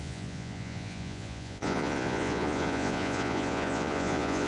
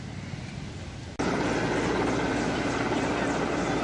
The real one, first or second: second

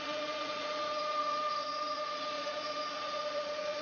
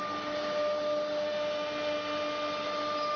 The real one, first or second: second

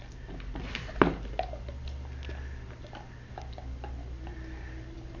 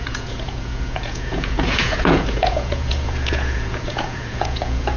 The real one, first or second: first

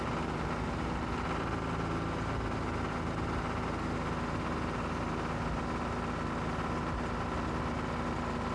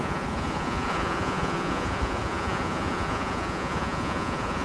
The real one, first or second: first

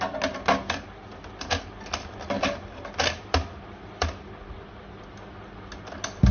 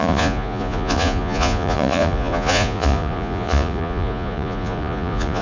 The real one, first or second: first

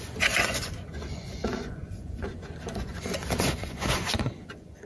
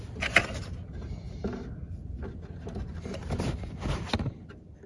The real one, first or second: second